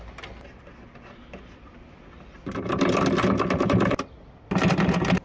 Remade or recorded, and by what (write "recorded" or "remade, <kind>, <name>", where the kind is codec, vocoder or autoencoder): recorded